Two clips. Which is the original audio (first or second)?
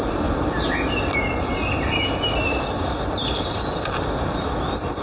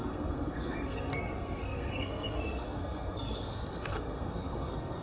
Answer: first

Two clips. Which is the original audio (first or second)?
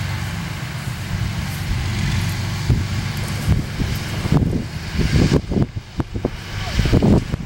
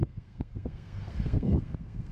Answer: first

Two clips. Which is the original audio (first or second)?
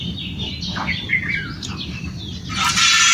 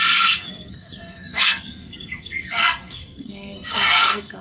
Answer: first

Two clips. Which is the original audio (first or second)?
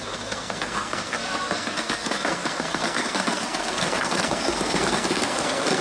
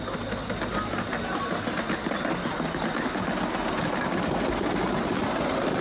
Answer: second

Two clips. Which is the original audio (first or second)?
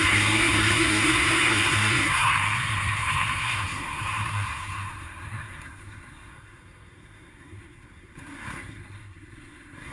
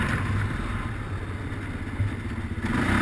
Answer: second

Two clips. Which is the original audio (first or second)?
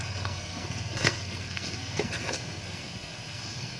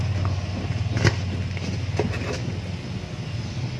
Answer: second